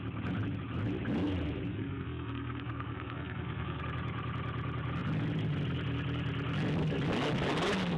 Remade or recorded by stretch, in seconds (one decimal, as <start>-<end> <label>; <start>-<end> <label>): 0.0-1.7 recorded; 1.7-3.8 remade; 3.8-8.0 recorded